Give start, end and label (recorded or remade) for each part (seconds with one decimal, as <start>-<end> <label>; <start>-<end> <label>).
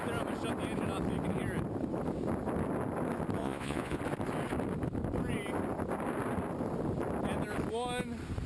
0.0-3.4 recorded; 3.4-4.0 remade; 4.0-8.5 recorded